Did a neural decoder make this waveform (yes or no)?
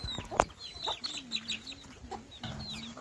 no